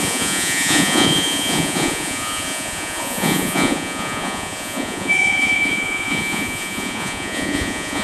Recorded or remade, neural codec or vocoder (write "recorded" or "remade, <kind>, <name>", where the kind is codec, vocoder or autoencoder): remade, vocoder, Vocos